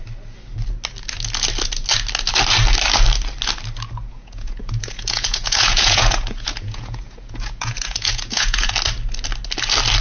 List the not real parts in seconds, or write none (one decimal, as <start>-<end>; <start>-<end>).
4.0-8.7